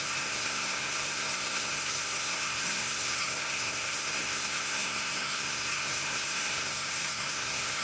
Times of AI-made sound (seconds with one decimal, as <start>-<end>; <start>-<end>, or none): 0.0-7.8